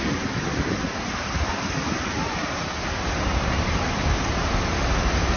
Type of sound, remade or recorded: recorded